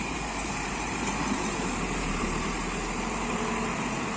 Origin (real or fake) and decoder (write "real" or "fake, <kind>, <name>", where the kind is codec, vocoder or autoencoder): fake, vocoder, BigVGAN v2